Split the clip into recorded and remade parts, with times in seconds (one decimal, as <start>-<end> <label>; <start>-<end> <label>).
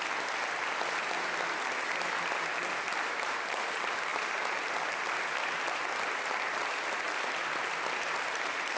0.0-8.8 recorded